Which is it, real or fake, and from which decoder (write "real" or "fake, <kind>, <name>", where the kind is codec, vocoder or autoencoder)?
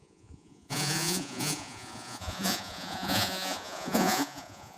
fake, vocoder, Vocos